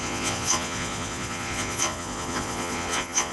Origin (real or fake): fake